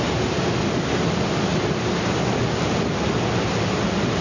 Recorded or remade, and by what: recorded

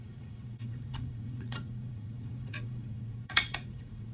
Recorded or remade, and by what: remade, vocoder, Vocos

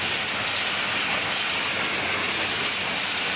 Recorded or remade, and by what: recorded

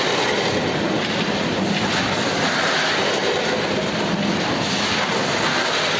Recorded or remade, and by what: recorded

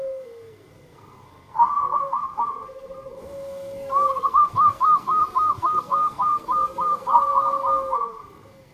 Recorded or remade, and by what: remade, codec, SNAC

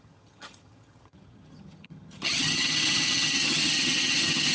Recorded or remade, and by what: remade, vocoder, HiFi-GAN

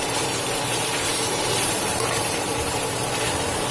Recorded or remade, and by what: remade, vocoder, BigVGAN v2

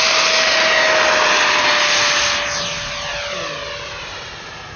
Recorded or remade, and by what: recorded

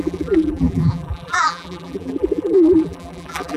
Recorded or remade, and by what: remade, vocoder, BigVGAN v2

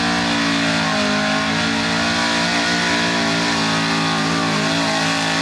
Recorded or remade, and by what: recorded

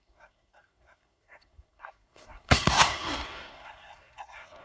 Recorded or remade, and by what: remade, codec, SNAC